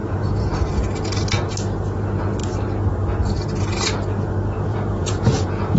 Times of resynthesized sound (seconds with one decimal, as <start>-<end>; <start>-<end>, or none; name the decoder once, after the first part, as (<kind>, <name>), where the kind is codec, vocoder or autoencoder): 0.0-0.7 (vocoder, Vocos); 4.7-5.8